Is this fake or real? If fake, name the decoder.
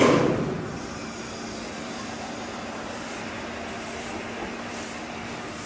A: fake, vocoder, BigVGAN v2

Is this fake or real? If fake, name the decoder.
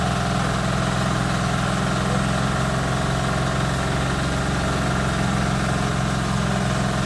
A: real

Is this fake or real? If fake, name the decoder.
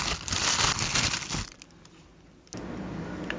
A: real